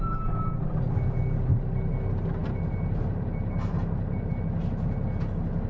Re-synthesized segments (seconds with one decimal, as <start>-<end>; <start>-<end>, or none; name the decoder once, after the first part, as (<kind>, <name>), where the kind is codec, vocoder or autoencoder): none